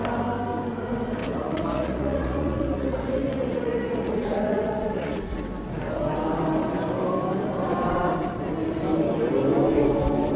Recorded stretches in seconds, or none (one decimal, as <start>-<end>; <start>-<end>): 0.0-1.2; 5.4-10.4